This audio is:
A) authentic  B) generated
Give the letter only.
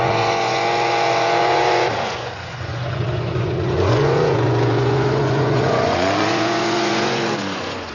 B